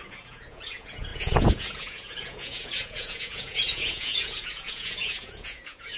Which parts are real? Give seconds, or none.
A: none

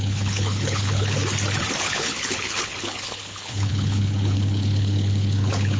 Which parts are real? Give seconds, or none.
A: 1.2-1.8

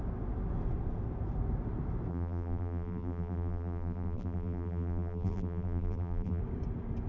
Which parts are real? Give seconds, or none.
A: 0.0-2.1; 6.4-7.1

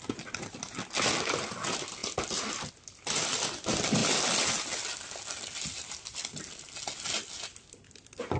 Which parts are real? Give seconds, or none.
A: 0.0-8.4

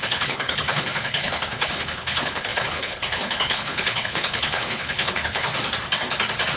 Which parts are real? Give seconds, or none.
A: 5.5-6.6